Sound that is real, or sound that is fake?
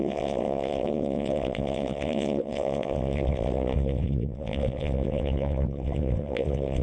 fake